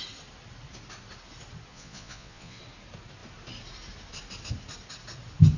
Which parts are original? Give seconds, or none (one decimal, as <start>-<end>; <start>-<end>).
0.0-1.7; 2.6-5.6